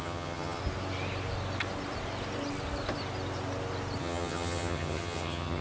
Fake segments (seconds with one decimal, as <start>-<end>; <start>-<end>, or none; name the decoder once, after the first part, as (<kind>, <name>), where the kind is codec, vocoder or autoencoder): 0.0-0.6 (vocoder, HiFi-GAN); 4.0-5.6